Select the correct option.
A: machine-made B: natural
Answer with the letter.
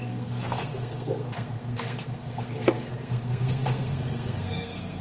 A